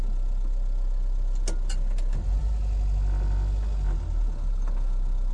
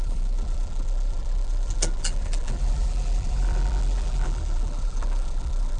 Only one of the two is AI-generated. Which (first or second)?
second